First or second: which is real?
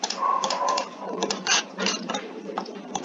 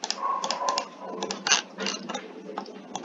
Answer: second